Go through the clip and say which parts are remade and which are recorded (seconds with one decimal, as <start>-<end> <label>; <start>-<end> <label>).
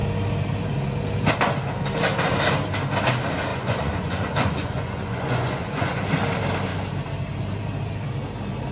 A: 0.0-3.5 recorded; 3.5-6.0 remade; 6.0-8.7 recorded